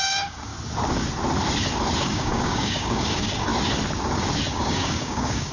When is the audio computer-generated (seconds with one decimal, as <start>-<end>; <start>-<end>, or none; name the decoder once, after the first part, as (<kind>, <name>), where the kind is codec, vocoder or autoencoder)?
0.0-0.5 (codec, DAC); 2.0-3.5; 4.5-5.5